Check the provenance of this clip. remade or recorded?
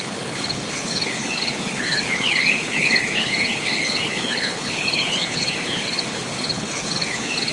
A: remade